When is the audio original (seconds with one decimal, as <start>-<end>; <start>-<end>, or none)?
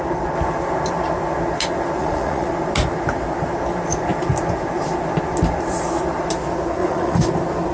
0.0-2.0; 2.5-6.8; 7.3-7.7